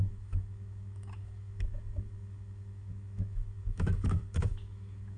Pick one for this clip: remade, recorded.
remade